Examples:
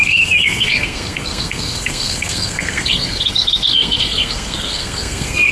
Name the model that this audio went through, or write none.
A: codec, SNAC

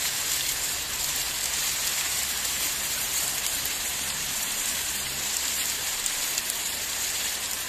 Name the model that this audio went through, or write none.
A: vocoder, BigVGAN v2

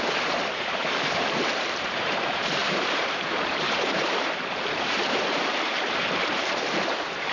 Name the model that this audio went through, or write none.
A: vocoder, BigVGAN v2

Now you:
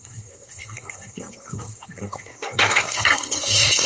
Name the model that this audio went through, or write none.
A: codec, SNAC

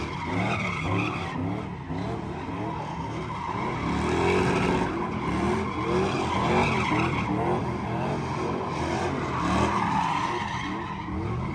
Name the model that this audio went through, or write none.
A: none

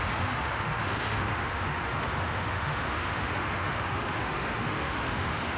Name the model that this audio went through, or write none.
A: autoencoder, DAC-VAE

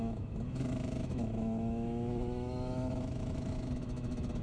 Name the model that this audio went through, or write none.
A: autoencoder, DAC-VAE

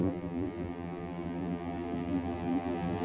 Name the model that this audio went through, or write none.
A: vocoder, BigVGAN v2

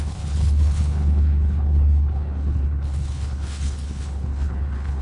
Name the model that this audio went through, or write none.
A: codec, HILCodec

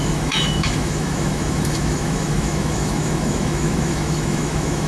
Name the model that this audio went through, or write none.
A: autoencoder, DAC-VAE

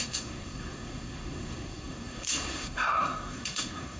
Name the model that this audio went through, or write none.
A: codec, SNAC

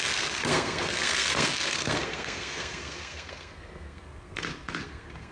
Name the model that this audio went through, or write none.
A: codec, SNAC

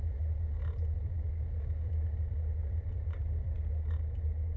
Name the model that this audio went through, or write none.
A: none